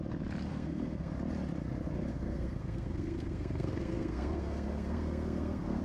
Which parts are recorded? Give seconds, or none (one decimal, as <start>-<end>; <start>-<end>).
0.0-0.5; 1.1-2.1